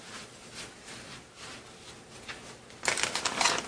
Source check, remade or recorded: recorded